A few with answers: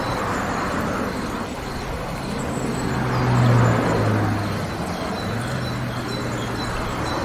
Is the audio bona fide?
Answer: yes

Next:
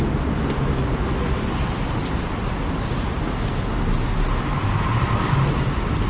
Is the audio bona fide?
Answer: yes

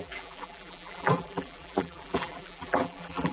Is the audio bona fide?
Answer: no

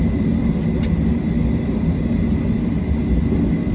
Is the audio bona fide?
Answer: yes